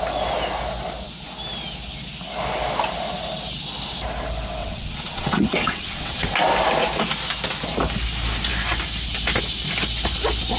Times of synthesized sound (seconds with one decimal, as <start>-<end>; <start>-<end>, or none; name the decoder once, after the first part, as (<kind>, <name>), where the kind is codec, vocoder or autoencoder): 4.6-6.3 (vocoder, WaveNeXt)